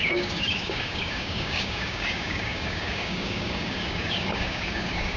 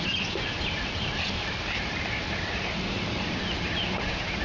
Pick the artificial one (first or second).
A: first